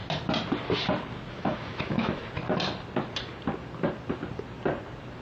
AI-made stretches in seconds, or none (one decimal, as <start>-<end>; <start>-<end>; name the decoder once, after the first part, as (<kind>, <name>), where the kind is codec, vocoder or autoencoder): 1.3-2.2 (autoencoder, DAC-VAE)